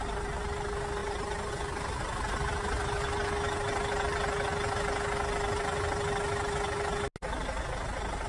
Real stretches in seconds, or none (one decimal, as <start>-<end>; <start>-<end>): 0.0-8.3